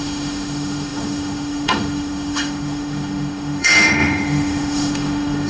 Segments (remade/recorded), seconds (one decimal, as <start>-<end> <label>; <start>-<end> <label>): 0.0-5.5 remade